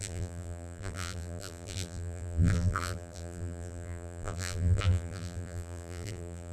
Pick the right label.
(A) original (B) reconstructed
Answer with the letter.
B